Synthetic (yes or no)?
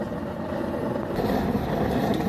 no